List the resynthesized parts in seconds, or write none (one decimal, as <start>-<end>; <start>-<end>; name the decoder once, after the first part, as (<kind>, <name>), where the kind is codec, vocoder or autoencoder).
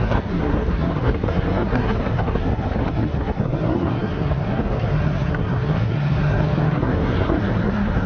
0.0-8.1 (codec, SNAC)